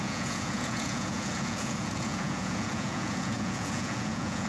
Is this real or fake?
fake